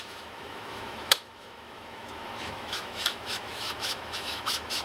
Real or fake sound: fake